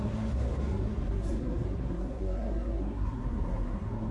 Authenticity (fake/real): fake